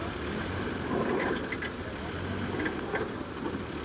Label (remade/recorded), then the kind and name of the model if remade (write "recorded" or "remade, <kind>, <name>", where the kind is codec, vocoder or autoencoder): recorded